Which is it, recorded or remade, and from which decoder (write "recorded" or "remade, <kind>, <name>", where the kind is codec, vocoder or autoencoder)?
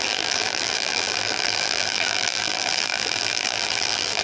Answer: remade, vocoder, BigVGAN v2